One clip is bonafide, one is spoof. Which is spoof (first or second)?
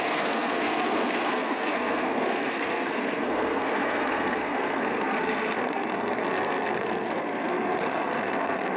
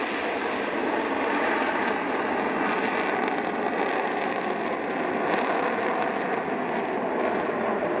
first